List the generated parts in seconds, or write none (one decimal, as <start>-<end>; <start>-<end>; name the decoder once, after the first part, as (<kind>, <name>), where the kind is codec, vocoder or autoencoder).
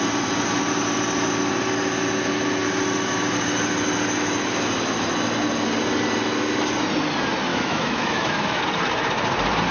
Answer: 7.5-8.6 (autoencoder, DAC-VAE)